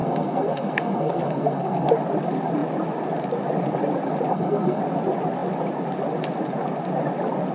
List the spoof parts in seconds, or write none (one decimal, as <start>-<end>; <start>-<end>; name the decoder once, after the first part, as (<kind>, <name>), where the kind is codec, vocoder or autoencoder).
0.0-1.9 (codec, SNAC); 4.3-4.8